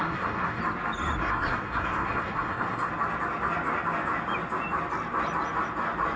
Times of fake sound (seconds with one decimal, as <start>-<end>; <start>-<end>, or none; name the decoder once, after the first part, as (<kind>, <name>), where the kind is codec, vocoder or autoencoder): 0.0-0.6 (codec, SNAC); 1.2-2.9